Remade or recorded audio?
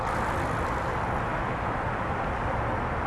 recorded